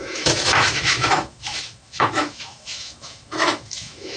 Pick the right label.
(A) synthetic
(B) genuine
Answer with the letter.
A